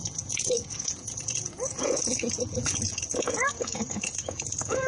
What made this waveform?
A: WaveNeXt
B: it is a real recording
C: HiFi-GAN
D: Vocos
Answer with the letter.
D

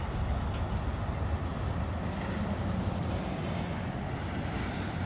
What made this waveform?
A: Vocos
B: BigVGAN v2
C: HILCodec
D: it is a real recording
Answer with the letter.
D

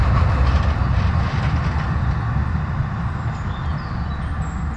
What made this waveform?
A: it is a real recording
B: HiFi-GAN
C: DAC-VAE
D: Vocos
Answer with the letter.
A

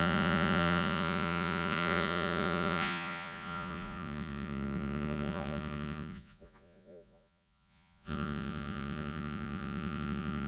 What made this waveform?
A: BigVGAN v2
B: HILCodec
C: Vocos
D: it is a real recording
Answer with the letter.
C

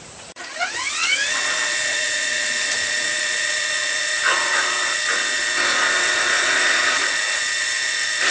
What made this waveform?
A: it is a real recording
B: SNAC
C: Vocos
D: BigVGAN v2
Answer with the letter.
C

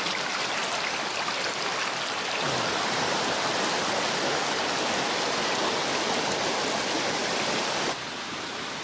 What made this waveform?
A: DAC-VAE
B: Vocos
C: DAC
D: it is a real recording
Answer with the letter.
D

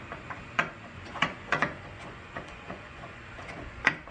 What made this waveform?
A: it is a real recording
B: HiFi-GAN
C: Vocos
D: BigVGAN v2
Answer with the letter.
C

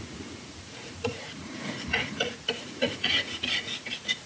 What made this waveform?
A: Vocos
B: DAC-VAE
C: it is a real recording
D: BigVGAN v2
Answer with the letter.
A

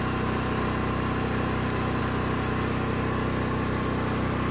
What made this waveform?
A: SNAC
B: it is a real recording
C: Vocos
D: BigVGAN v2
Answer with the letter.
B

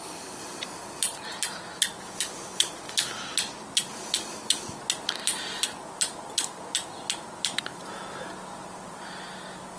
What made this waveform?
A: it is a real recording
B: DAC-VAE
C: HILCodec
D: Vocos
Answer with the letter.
A